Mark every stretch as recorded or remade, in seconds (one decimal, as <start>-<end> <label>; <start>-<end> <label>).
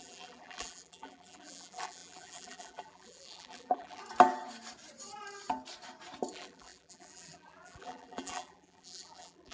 0.0-4.0 remade; 4.0-6.3 recorded; 6.3-9.5 remade